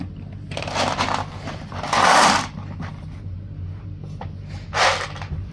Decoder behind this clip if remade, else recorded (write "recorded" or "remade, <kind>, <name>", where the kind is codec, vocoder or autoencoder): recorded